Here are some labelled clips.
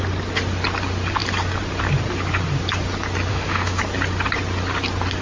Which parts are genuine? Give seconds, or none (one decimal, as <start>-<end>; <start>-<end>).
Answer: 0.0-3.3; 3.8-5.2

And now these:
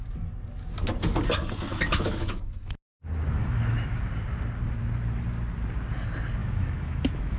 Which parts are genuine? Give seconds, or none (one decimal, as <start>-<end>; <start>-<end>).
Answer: 0.0-1.7; 2.5-3.4; 4.0-6.4

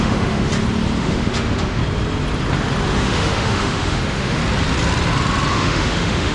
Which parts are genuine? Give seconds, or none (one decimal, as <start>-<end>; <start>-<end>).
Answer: 0.5-1.0; 1.8-3.0; 4.4-5.5

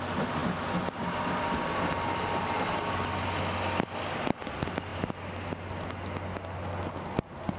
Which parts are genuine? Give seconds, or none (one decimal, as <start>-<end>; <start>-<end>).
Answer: 0.0-7.6